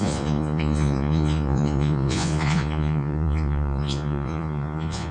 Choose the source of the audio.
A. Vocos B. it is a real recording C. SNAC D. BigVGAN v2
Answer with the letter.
A